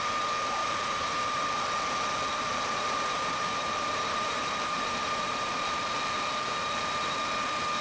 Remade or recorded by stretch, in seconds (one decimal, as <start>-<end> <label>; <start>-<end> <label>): 0.0-0.6 recorded; 0.6-1.5 remade; 1.5-2.5 recorded; 2.5-5.8 remade; 5.8-7.8 recorded